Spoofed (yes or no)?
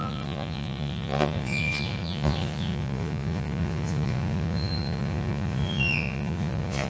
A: yes